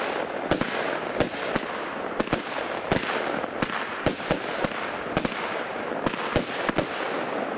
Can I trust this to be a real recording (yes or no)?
yes